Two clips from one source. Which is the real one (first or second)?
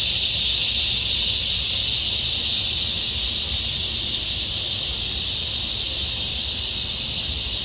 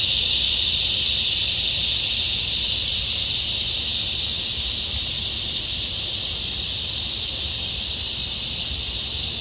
first